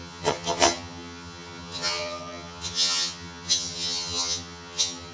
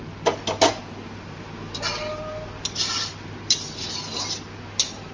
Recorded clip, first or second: second